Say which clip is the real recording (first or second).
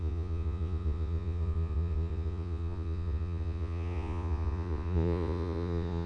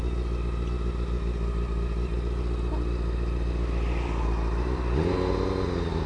second